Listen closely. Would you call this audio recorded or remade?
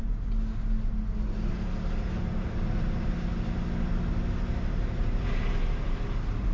recorded